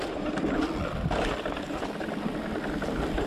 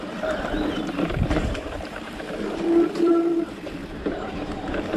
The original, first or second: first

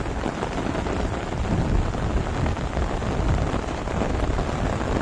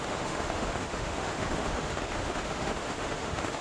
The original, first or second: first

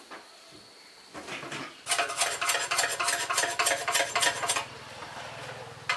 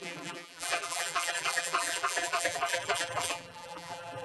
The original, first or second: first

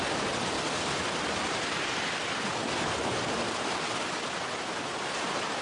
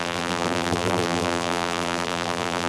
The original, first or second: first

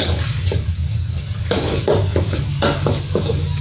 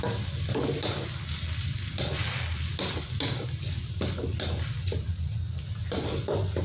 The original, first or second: second